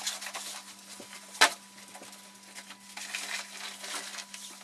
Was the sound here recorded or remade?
recorded